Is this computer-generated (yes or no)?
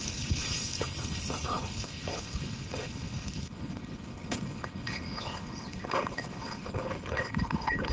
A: yes